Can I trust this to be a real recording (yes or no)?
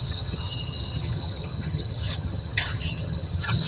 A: no